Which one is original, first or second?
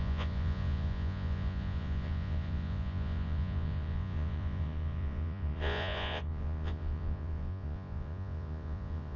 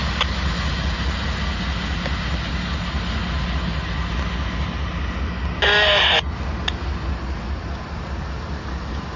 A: second